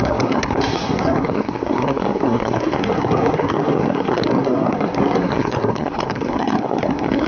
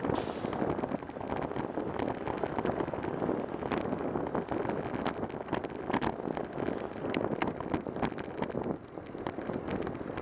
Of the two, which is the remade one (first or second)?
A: first